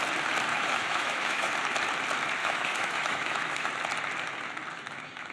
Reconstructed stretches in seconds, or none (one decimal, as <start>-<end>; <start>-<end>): 0.5-1.5; 2.4-3.7